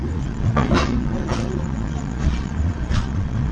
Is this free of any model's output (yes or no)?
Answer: no